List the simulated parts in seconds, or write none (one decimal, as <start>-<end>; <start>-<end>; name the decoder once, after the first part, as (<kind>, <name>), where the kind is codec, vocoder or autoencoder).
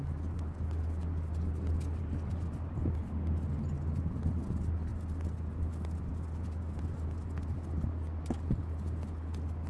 none